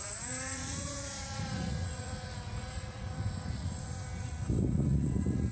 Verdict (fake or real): fake